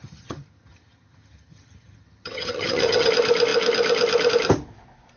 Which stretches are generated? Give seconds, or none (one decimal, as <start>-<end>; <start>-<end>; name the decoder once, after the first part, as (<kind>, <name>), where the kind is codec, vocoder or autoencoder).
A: 0.0-3.1 (vocoder, HiFi-GAN)